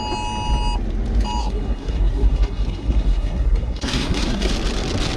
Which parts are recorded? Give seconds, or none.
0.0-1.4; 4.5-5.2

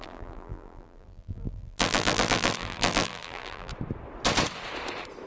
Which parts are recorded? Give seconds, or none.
3.7-5.3

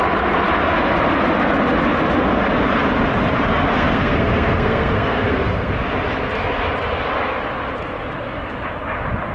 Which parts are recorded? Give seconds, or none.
0.0-3.7; 5.7-9.3

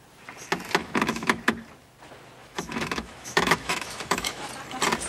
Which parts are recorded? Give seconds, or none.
0.0-0.8; 1.4-2.4; 4.5-5.1

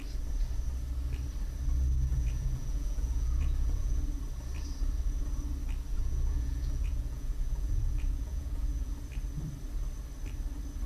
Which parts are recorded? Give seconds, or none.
0.0-2.1; 4.0-6.0; 8.9-10.9